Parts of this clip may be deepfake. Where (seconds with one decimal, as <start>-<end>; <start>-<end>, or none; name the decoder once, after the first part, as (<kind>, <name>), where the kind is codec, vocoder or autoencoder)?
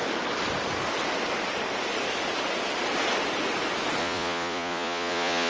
4.0-5.5 (vocoder, Vocos)